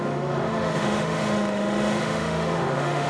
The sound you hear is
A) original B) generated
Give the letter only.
B